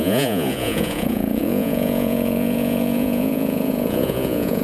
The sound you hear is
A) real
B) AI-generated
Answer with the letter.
B